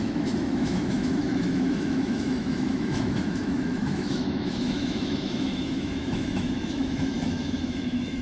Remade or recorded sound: remade